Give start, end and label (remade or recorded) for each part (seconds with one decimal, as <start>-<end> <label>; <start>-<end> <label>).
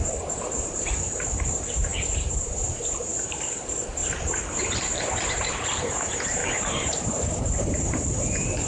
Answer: 0.0-4.0 remade; 4.0-4.6 recorded; 4.6-8.7 remade